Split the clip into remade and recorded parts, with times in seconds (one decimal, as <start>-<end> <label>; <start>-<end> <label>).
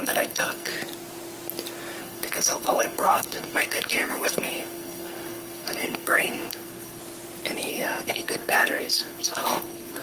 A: 0.0-0.7 remade; 0.7-2.0 recorded; 2.0-7.0 remade; 7.0-7.7 recorded; 7.7-10.0 remade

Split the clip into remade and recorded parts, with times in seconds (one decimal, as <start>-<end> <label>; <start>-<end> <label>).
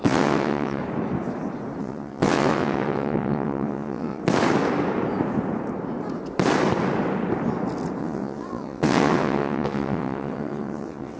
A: 0.0-0.8 remade; 0.8-1.8 recorded; 1.8-4.2 remade; 4.2-8.0 recorded; 8.0-11.2 remade